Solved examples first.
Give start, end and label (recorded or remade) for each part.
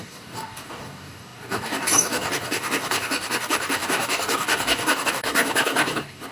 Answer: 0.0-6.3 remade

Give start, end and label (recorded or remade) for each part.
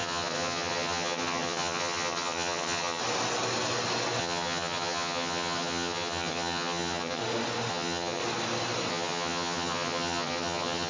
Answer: 0.0-3.0 remade; 3.0-4.2 recorded; 4.2-7.2 remade; 7.2-7.7 recorded; 7.7-8.2 remade; 8.2-8.9 recorded; 8.9-10.9 remade